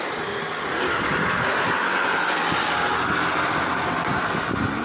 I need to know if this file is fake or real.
real